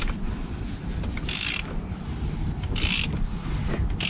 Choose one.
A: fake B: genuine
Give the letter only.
B